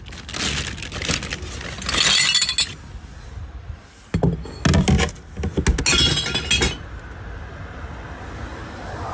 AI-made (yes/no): no